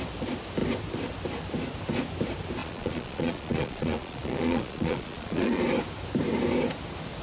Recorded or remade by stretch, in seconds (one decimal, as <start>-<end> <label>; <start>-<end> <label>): 0.0-2.6 recorded; 2.6-5.6 remade; 5.6-7.2 recorded